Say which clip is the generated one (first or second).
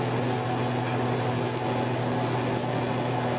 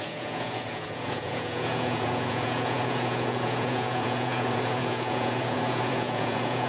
second